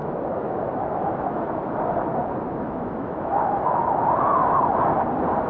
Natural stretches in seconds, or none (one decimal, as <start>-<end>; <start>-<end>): 1.6-2.1; 4.9-5.5